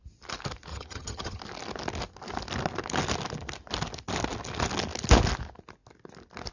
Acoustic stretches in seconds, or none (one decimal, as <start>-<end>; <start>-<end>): 0.0-0.7; 1.4-6.5